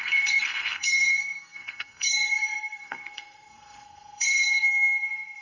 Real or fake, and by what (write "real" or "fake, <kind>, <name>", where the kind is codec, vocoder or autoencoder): fake, codec, SNAC